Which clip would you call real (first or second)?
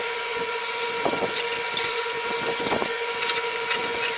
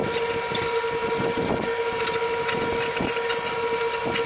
second